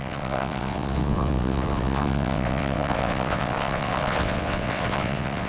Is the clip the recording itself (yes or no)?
no